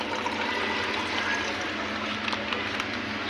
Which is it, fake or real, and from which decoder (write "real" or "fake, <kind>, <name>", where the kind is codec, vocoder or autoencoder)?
real